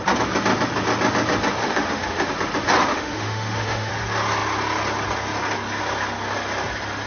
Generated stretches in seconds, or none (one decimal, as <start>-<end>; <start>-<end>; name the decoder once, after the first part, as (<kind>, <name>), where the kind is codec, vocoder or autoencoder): 1.6-2.3 (autoencoder, DAC-VAE); 2.9-3.9